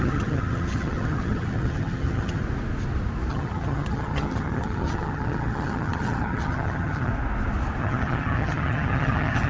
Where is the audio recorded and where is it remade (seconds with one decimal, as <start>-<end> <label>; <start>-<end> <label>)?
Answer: 0.0-2.4 remade; 2.4-3.3 recorded; 3.3-7.1 remade; 7.1-7.8 recorded; 7.8-9.5 remade